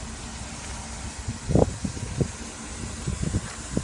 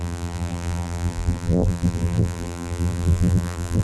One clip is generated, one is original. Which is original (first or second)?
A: first